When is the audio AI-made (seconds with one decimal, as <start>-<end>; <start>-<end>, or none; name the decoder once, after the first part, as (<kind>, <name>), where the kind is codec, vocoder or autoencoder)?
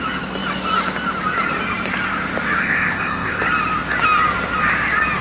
2.6-3.4 (codec, ZipCodec)